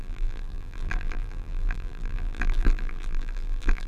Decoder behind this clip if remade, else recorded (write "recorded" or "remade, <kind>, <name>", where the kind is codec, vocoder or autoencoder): remade, vocoder, BigVGAN v2